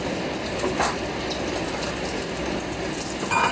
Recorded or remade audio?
recorded